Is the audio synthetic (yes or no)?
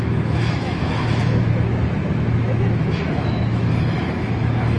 yes